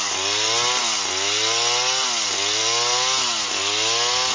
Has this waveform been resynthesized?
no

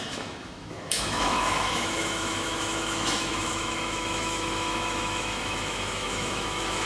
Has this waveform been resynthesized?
yes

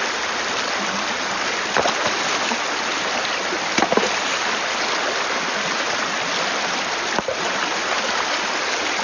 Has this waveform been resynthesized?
no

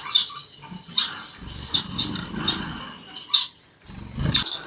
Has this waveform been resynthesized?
no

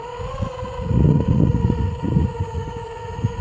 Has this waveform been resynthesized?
yes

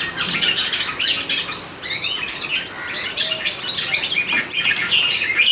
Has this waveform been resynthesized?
no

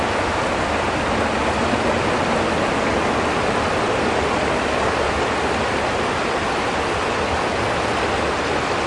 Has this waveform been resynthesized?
no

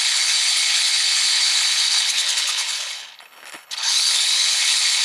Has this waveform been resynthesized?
yes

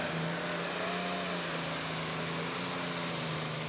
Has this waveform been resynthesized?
no